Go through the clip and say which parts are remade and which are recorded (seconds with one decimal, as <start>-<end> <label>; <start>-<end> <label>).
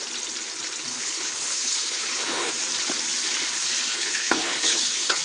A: 0.0-0.9 recorded; 0.9-2.5 remade; 2.5-3.9 recorded; 3.9-5.2 remade